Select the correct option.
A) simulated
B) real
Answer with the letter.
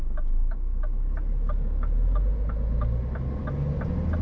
B